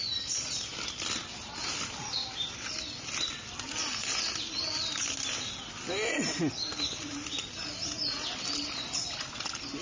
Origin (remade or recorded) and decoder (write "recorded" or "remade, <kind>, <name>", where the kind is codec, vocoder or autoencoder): recorded